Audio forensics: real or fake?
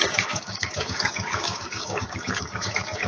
fake